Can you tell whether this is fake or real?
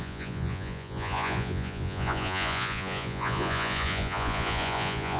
fake